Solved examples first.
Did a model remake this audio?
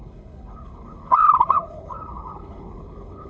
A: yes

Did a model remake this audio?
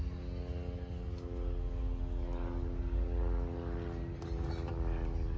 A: no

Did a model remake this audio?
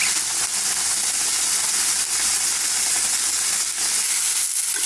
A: no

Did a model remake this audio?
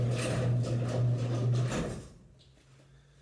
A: no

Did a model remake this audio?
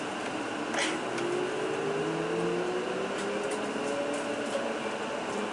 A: no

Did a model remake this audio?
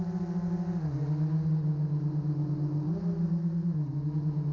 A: no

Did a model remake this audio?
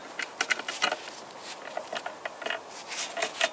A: no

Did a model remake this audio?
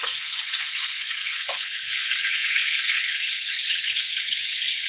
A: yes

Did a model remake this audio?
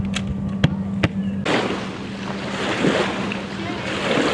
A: no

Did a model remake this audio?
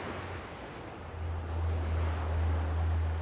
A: no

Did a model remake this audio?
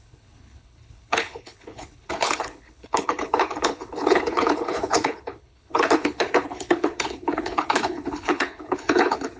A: yes